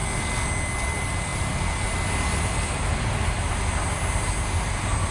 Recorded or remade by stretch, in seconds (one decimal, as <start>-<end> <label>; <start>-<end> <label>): 0.0-5.1 recorded